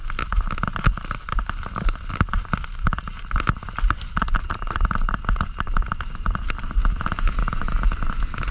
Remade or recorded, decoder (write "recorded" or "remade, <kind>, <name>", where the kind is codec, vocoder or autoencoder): recorded